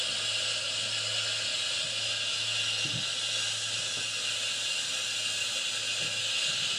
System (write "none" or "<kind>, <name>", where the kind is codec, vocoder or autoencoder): none